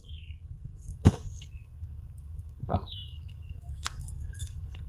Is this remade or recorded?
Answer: remade